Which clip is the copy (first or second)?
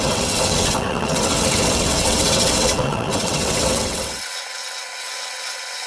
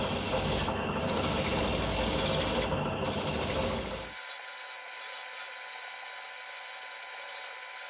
first